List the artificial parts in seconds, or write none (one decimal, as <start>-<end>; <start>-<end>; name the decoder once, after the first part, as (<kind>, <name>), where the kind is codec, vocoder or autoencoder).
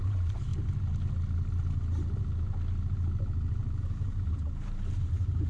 0.0-0.5 (vocoder, BigVGAN v2); 3.8-5.5